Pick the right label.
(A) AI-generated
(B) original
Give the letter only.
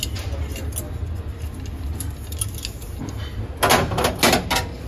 B